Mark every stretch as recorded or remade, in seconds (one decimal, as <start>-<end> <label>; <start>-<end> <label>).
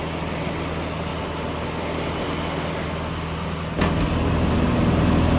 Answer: 0.0-5.4 recorded